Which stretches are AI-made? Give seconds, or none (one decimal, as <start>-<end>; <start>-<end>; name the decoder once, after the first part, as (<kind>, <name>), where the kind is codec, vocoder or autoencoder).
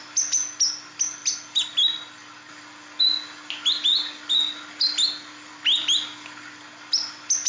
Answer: none